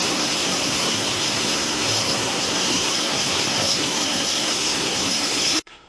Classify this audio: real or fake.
fake